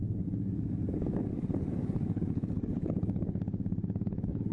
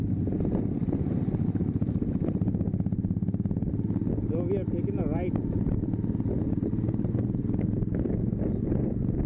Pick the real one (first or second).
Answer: second